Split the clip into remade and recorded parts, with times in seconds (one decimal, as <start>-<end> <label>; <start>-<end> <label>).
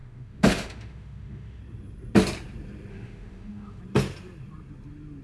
0.0-1.6 remade; 1.6-2.9 recorded; 2.9-3.8 remade; 3.8-5.2 recorded